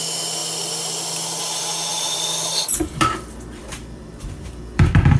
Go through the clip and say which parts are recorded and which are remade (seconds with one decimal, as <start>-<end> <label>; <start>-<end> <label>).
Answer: 0.0-1.9 recorded; 1.9-5.2 remade